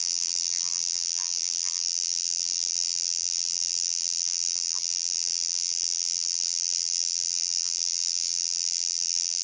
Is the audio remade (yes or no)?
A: yes